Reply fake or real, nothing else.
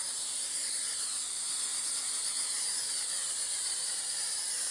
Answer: fake